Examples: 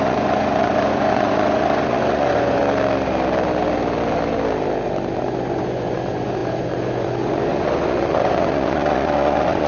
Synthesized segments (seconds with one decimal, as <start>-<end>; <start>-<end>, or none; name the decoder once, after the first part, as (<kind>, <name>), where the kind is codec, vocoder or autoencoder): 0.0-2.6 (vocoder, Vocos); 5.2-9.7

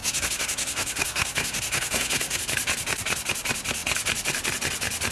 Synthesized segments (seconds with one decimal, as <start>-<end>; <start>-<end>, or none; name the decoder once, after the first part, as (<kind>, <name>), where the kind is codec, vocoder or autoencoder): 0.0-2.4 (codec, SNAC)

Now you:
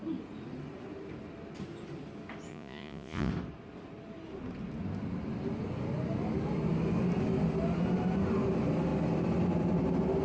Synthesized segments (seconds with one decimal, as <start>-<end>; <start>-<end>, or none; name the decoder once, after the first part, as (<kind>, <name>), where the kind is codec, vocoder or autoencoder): 2.5-3.3 (vocoder, Vocos)